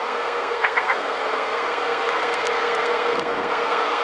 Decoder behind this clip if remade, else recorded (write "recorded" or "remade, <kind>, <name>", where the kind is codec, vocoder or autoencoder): remade, codec, SNAC